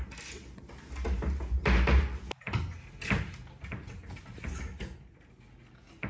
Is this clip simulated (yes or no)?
no